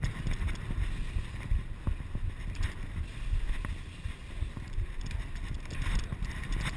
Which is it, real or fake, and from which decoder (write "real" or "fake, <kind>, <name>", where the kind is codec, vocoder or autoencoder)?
real